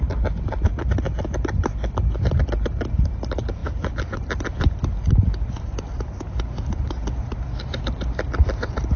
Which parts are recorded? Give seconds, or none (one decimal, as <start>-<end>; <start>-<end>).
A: 0.0-9.0